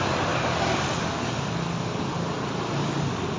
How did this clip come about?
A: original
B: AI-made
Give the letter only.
A